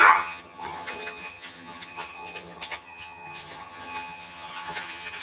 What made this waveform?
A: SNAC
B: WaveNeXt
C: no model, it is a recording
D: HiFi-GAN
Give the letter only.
D